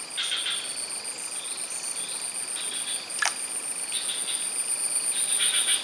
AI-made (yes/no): no